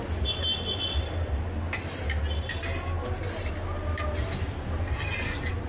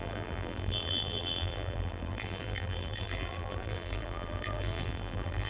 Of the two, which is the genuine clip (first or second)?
first